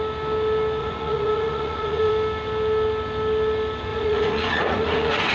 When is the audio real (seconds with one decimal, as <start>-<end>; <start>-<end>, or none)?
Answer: 0.0-0.8; 2.1-3.9